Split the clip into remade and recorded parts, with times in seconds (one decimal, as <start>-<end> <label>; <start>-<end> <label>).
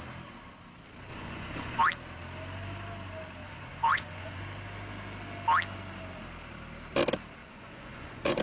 0.0-1.1 recorded; 1.1-1.8 remade; 1.8-3.4 recorded; 3.4-4.4 remade; 4.4-7.4 recorded; 7.4-8.4 remade